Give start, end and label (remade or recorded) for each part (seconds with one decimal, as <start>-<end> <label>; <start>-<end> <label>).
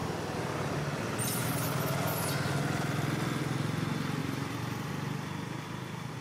0.0-4.2 recorded; 4.2-4.9 remade; 4.9-6.2 recorded